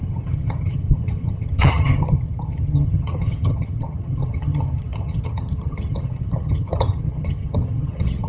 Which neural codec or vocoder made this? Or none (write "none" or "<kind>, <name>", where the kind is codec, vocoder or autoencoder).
vocoder, HiFi-GAN